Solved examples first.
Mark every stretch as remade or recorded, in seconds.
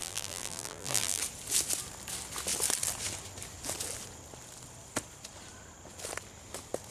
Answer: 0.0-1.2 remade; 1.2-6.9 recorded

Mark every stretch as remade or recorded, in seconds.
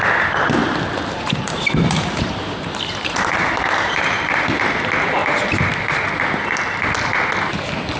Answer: 0.0-0.6 recorded; 0.6-4.5 remade; 4.5-5.2 recorded; 5.2-5.7 remade; 5.7-8.0 recorded